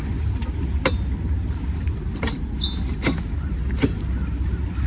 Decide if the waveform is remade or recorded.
recorded